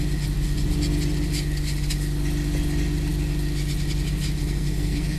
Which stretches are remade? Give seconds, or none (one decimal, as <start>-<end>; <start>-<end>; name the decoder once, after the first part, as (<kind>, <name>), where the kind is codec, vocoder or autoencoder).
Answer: 4.4-5.2 (codec, SNAC)